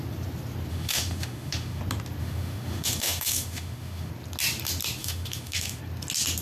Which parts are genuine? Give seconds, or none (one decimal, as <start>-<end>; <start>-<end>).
0.0-0.7; 1.8-2.2; 4.1-5.0; 5.8-6.4